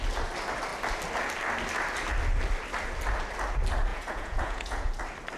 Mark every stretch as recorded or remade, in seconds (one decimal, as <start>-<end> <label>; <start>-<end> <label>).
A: 0.0-3.9 recorded; 3.9-4.9 remade; 4.9-5.4 recorded